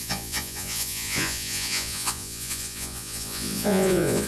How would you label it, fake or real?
fake